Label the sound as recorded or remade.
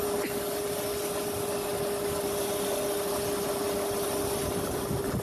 recorded